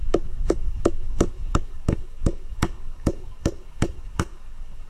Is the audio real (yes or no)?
no